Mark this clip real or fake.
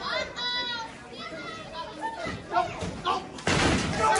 real